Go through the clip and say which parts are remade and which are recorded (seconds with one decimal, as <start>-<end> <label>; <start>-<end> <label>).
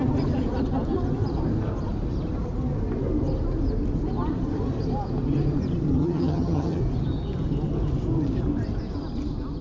0.0-5.9 recorded; 5.9-6.8 remade; 6.8-9.6 recorded